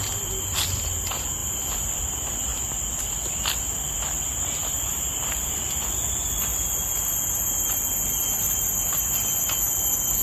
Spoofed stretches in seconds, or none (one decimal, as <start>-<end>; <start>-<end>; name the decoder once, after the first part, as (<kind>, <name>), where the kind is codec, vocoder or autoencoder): 1.4-2.0 (vocoder, BigVGAN v2); 4.6-5.6